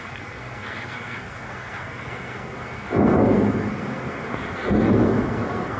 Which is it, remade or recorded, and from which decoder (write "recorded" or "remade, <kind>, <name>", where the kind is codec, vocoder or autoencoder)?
remade, codec, SNAC